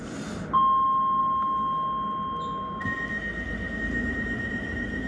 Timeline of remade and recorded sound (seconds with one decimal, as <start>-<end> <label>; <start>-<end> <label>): 0.0-5.1 recorded